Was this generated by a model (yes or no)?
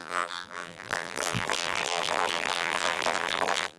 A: yes